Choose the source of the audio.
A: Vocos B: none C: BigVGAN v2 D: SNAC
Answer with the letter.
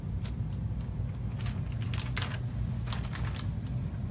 B